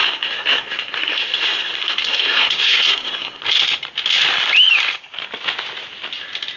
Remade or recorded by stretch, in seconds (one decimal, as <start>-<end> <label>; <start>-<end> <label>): 0.0-3.4 remade; 3.4-6.6 recorded